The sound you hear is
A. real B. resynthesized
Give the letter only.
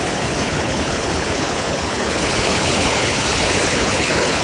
B